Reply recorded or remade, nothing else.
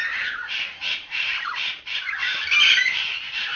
remade